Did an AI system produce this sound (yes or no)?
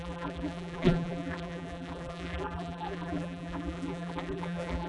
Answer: yes